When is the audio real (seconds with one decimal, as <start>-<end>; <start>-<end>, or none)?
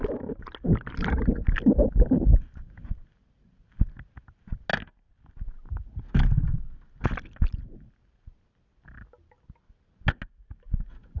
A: 0.0-11.2